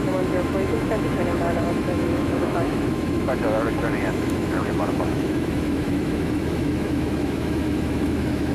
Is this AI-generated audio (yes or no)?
yes